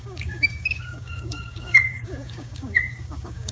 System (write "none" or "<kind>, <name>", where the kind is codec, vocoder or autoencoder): codec, DAC